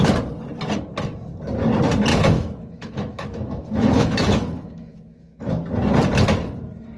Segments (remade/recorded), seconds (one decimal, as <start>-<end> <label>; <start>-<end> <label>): 0.0-2.1 recorded; 2.1-5.5 remade; 5.5-7.0 recorded